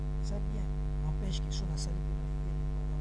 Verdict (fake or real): real